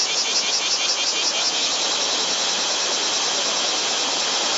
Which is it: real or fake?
real